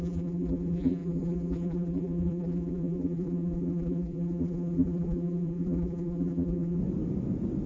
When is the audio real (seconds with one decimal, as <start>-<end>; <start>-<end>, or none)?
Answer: 6.8-7.7